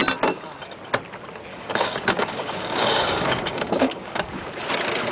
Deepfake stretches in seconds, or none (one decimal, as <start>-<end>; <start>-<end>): 1.5-4.6

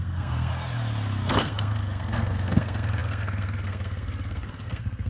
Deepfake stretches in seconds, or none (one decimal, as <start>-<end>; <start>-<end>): 0.0-0.5; 1.3-5.1

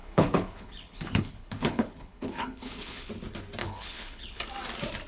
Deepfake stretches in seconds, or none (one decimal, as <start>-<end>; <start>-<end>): 0.0-3.1; 3.6-4.4

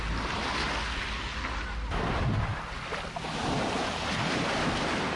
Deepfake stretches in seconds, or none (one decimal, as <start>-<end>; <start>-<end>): none